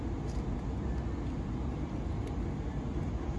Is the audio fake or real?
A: real